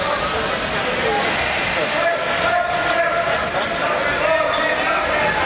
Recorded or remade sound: recorded